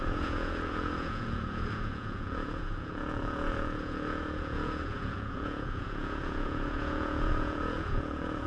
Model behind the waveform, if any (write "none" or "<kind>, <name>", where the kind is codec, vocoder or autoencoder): vocoder, Vocos